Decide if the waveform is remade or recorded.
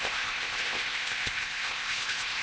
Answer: remade